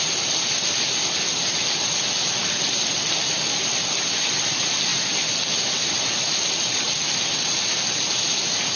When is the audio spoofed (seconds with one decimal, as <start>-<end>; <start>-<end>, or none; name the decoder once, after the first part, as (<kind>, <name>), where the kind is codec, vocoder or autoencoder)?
none